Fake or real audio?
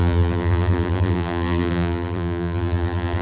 fake